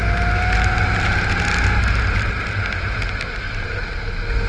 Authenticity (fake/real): real